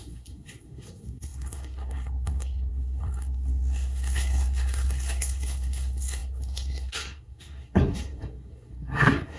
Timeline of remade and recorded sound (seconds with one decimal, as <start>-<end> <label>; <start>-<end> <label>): 0.0-9.4 remade